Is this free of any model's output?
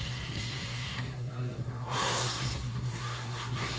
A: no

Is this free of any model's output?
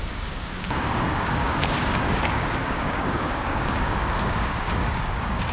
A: no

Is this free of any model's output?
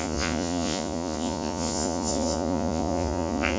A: no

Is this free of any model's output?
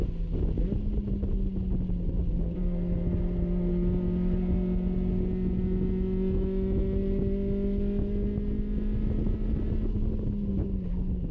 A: yes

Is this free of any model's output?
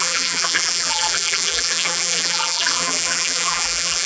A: no